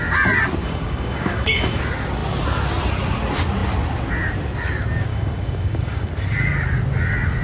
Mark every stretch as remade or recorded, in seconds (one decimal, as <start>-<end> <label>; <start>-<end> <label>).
0.0-0.6 recorded; 0.6-1.8 remade; 1.8-5.1 recorded; 5.1-6.1 remade; 6.1-7.4 recorded